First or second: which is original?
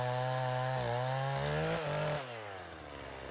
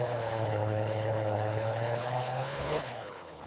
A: first